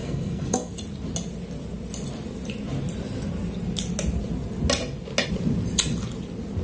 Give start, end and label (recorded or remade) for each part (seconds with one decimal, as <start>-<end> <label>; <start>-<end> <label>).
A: 0.0-0.7 remade; 0.7-6.6 recorded